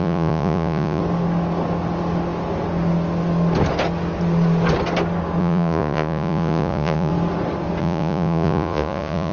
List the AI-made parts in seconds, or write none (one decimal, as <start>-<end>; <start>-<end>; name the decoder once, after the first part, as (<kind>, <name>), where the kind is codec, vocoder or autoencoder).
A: 0.0-1.0 (vocoder, Vocos); 5.4-7.1; 7.8-9.3